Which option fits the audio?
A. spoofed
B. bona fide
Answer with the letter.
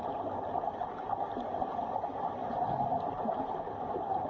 B